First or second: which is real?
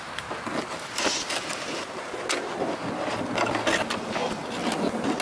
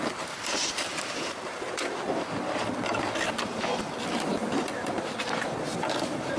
first